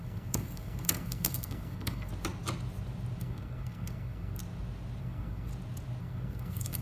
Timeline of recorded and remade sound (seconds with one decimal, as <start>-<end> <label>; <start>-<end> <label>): 0.0-2.1 remade; 2.1-3.2 recorded; 3.2-4.4 remade; 4.4-5.0 recorded; 5.0-5.5 remade; 5.5-6.0 recorded; 6.0-6.8 remade